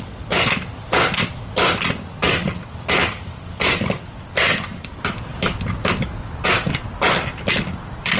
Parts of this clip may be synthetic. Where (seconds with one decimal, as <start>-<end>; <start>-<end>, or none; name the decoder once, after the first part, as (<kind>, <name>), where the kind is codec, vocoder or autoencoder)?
none